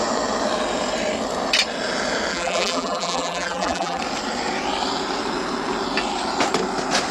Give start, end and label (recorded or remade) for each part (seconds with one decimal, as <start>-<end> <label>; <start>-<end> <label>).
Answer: 0.0-2.3 recorded; 2.3-4.0 remade; 4.0-7.1 recorded